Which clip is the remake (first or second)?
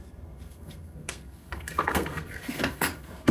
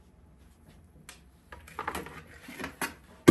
first